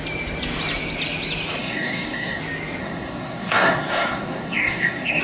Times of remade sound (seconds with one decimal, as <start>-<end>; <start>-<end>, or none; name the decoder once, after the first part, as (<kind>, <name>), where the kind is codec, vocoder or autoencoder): 1.6-2.4 (codec, SNAC); 2.8-5.2